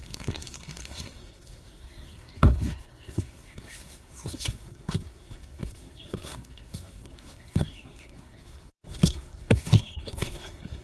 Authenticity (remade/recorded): remade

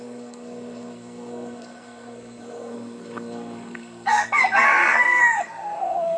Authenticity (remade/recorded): remade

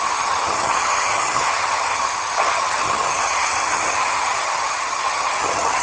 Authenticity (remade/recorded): remade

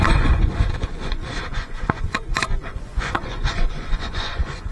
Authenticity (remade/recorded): remade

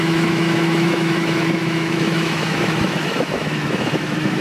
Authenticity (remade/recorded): remade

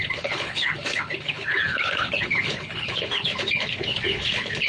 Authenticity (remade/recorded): remade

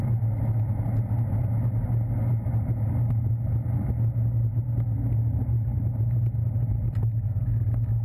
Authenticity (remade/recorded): recorded